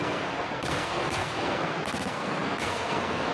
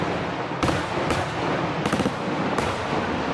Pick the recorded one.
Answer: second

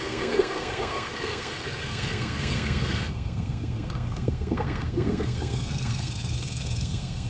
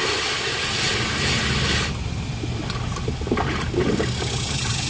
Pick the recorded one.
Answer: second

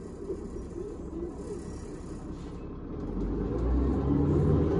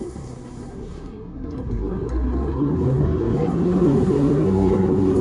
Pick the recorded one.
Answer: first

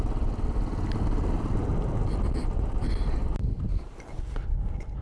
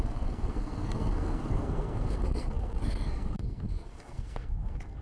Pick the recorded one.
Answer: first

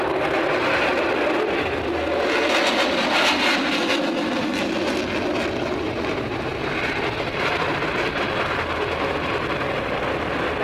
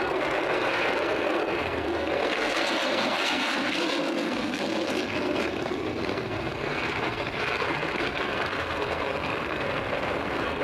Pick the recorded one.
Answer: first